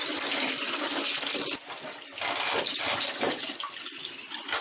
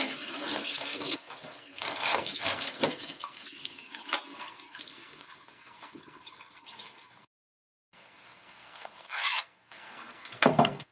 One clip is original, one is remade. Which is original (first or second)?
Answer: first